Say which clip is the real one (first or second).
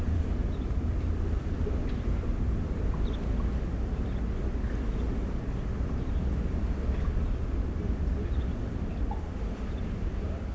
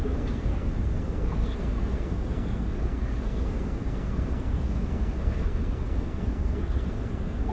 first